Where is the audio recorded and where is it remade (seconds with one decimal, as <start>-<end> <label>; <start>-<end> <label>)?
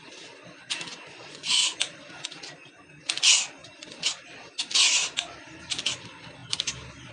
0.0-0.9 recorded; 0.9-1.8 remade; 1.8-7.1 recorded